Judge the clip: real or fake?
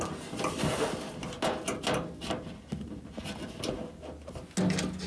real